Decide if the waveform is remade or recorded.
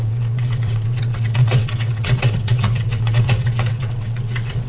remade